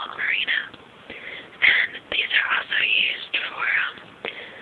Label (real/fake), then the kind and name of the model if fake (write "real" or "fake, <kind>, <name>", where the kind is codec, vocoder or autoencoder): real